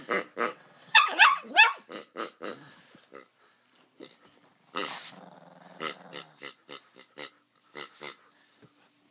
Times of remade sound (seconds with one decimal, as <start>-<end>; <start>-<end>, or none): 0.5-1.5